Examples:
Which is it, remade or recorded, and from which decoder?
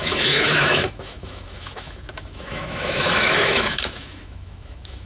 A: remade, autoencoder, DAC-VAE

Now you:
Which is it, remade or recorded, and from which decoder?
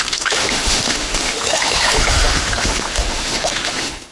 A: remade, autoencoder, DAC-VAE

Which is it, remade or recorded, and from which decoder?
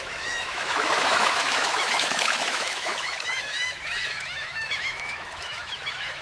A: remade, autoencoder, DAC-VAE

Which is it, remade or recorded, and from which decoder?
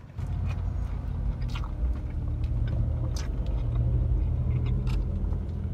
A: recorded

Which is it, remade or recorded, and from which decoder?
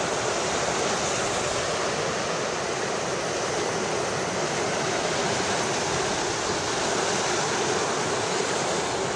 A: recorded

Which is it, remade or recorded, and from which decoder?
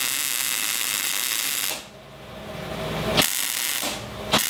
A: recorded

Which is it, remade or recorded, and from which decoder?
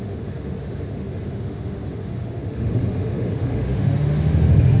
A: remade, autoencoder, DAC-VAE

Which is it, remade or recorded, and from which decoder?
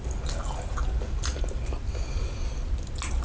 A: recorded